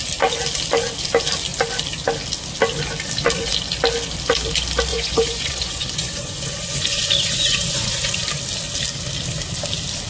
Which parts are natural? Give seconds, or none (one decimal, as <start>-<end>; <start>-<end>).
0.0-4.9; 8.1-10.1